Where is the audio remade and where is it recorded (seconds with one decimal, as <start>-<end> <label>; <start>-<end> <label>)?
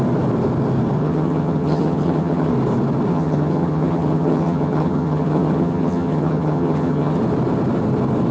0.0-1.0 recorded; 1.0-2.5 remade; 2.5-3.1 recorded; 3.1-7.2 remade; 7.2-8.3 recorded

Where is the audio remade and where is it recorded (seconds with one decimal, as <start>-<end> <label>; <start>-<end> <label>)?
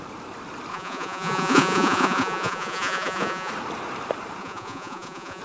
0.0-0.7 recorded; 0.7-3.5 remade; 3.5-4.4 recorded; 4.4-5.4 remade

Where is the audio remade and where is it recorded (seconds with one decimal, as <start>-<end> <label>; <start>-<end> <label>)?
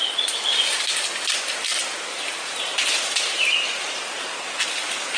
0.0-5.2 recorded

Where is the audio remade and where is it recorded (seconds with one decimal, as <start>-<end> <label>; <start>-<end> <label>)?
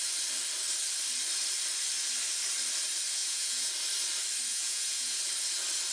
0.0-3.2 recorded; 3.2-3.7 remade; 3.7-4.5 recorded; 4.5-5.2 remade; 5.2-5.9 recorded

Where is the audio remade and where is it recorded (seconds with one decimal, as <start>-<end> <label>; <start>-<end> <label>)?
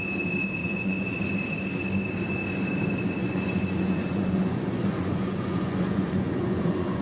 0.0-0.6 recorded; 0.6-1.2 remade; 1.2-3.2 recorded; 3.2-7.0 remade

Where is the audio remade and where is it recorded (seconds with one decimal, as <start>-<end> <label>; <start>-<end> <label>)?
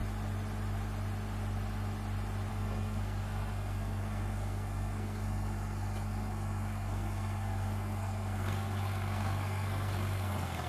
0.0-2.5 recorded; 2.5-10.7 remade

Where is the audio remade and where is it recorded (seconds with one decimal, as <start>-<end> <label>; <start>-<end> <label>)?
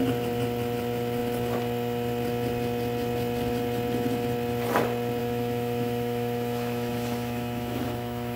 0.0-5.2 recorded; 5.2-8.4 remade